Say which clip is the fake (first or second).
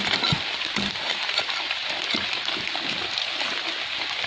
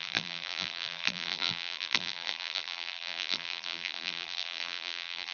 second